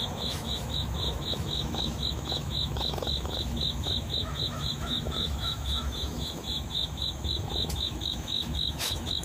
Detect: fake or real fake